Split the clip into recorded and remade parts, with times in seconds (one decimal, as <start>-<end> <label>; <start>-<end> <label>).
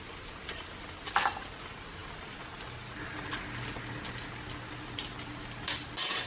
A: 0.0-6.3 recorded